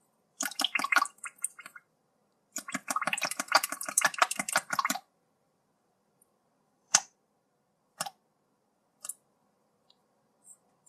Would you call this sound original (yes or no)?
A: no